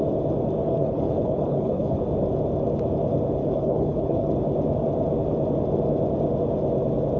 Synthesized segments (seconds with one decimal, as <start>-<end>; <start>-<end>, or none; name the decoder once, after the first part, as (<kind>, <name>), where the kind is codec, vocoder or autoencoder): 0.6-2.0 (codec, HILCodec); 3.4-4.3